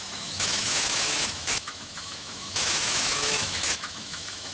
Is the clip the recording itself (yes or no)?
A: no